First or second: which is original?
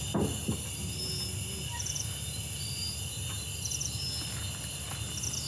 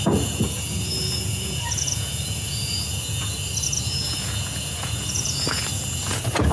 first